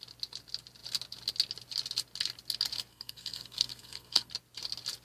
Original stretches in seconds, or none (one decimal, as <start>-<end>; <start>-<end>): 0.0-2.9; 4.3-5.0